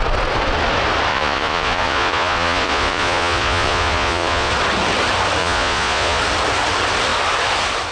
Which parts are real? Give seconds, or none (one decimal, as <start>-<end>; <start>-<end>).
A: 0.0-1.1; 4.5-5.4; 6.2-7.9